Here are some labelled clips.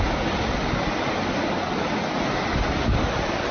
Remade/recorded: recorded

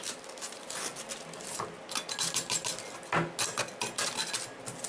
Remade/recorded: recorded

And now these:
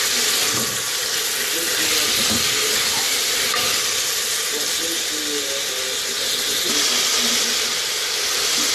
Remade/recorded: recorded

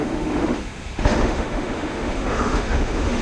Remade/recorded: remade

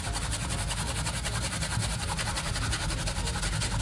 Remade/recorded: recorded